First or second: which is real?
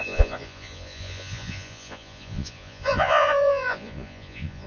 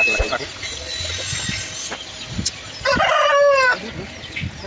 second